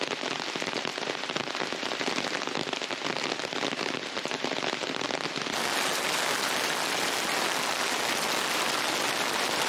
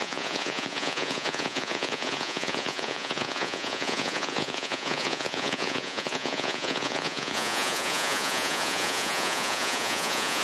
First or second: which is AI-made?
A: second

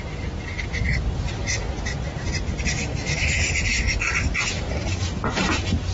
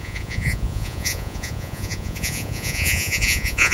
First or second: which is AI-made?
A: second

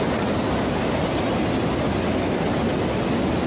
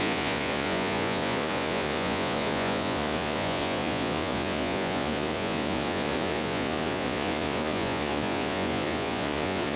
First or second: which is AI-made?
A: second